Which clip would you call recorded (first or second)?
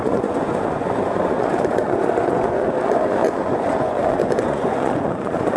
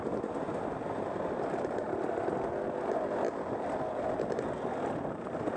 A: second